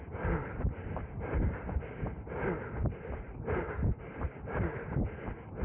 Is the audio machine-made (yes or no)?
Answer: no